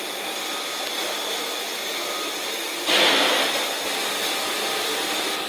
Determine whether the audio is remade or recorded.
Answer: recorded